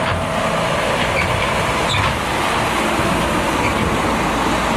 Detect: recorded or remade recorded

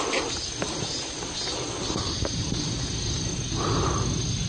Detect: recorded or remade recorded